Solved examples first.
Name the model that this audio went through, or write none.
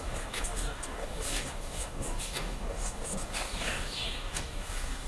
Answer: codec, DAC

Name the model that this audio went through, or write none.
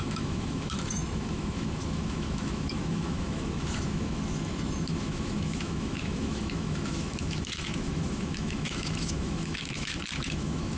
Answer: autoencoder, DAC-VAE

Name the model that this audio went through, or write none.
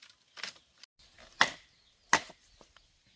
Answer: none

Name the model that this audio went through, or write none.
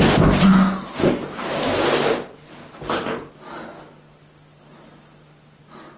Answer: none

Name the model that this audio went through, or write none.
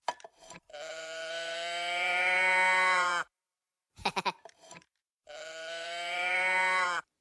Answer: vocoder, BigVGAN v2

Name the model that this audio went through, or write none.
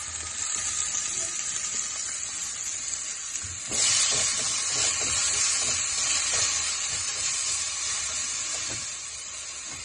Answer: none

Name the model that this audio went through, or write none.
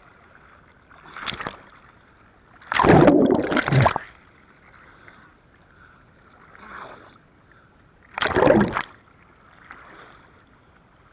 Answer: none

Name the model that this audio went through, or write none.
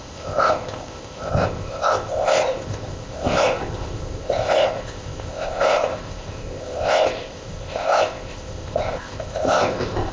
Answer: codec, ZipCodec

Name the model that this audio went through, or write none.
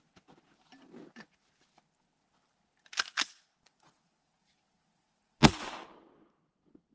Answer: none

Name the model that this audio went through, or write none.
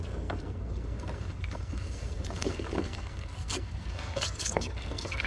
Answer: codec, SNAC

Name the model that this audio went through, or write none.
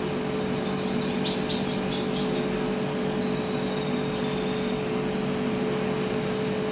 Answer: none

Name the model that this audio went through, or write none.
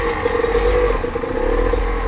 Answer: none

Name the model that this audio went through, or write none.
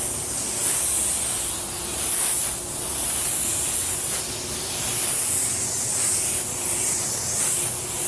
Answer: none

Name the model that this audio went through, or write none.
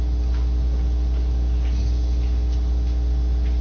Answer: none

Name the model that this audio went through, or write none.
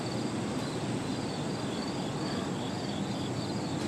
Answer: none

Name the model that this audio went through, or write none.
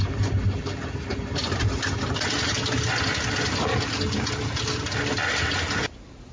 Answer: none